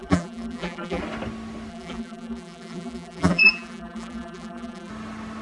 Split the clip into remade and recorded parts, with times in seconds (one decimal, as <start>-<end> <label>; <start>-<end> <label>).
0.0-1.0 remade; 1.0-1.7 recorded; 1.7-4.9 remade; 4.9-5.4 recorded